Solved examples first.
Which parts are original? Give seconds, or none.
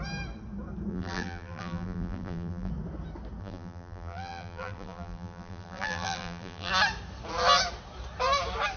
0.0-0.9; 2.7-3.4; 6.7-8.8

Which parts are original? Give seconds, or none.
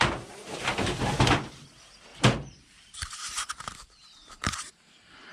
0.0-2.1; 3.5-4.2; 4.7-5.3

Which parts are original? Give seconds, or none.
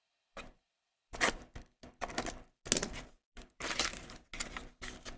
0.0-3.3; 4.3-5.2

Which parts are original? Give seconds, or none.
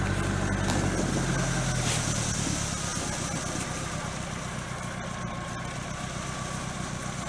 0.0-7.3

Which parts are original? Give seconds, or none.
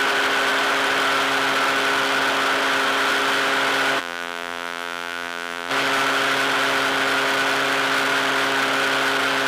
0.0-4.0; 5.7-9.5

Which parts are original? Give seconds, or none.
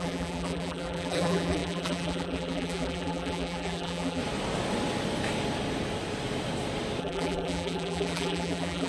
4.2-7.0